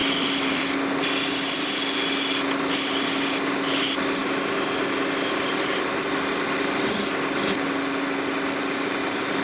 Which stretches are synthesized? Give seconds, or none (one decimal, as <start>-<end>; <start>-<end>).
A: 0.0-0.6